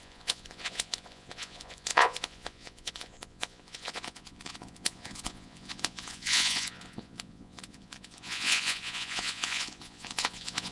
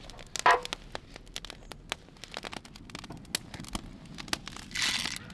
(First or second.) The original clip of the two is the second